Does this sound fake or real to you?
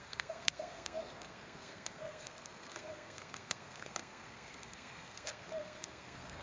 fake